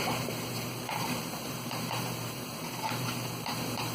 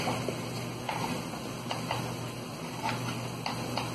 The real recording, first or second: second